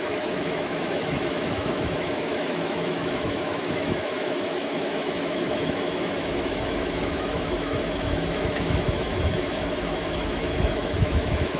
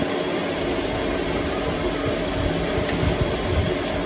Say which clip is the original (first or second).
second